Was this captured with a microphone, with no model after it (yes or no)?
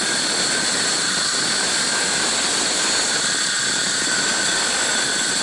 yes